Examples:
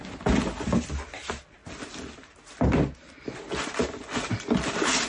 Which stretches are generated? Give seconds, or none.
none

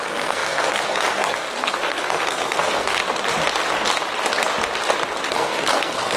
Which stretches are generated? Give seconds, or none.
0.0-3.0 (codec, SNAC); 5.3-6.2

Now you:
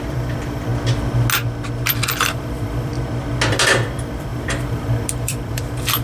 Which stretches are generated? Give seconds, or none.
0.0-0.7 (vocoder, BigVGAN v2); 1.9-2.9; 3.5-6.0